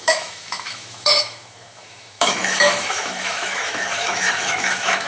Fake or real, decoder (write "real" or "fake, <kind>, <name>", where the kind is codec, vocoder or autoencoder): fake, autoencoder, DAC-VAE